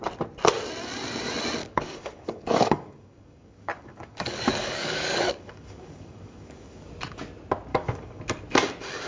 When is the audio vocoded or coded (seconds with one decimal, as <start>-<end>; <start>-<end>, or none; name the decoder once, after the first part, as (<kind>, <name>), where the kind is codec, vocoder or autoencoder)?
1.6-6.9 (codec, DAC); 7.7-8.2

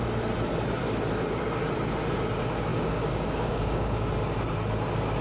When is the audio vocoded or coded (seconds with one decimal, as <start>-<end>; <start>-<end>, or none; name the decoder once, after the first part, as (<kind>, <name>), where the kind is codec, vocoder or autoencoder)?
2.7-4.1 (codec, DAC)

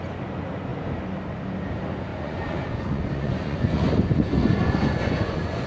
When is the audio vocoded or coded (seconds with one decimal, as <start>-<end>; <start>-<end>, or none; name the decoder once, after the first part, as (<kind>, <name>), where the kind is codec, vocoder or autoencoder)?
2.1-5.7 (vocoder, Vocos)

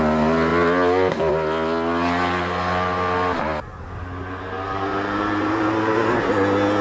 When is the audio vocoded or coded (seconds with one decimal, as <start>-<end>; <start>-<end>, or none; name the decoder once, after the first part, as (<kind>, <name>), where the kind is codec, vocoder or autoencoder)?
4.9-6.1 (vocoder, BigVGAN v2)